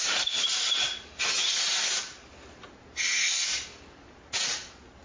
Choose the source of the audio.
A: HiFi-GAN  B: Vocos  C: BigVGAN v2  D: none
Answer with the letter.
D